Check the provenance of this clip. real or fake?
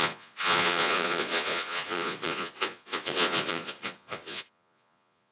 fake